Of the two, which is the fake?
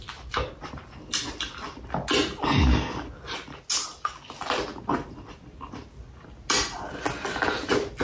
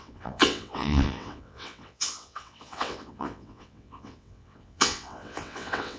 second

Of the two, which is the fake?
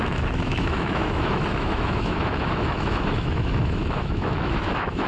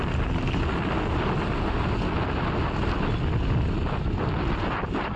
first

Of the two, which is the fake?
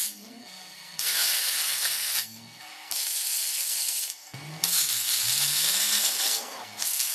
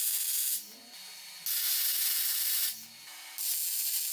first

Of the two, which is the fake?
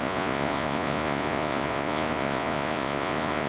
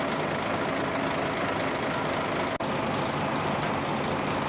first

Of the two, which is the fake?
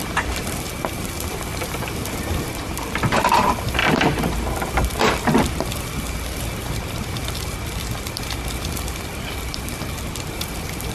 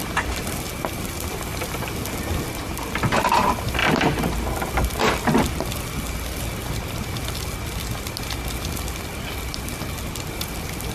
first